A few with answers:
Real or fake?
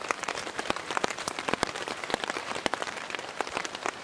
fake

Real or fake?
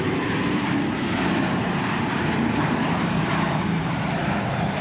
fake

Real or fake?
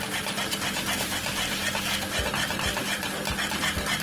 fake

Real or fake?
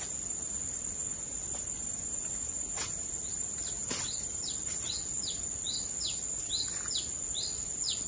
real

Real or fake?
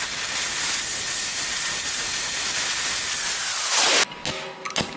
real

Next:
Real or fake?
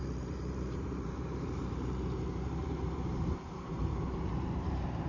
fake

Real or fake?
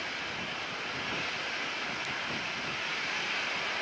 real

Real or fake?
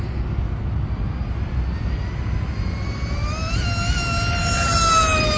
real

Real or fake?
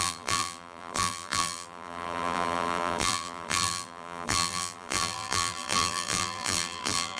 fake